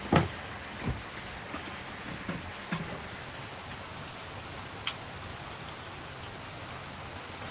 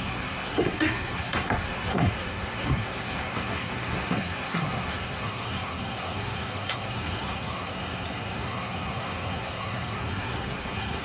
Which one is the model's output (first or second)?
second